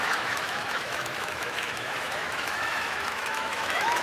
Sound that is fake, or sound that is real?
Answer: fake